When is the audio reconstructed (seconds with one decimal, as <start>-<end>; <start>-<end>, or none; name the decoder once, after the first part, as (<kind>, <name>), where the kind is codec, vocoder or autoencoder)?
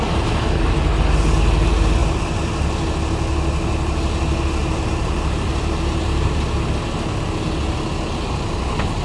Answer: 4.6-6.5 (vocoder, BigVGAN v2)